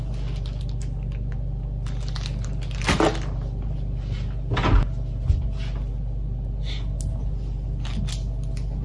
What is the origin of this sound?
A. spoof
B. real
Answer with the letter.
B